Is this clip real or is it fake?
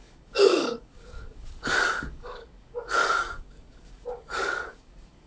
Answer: fake